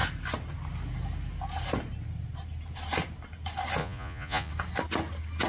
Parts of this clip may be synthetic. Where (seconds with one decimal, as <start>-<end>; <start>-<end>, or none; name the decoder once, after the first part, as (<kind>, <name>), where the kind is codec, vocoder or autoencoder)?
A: 3.8-4.5 (vocoder, Vocos)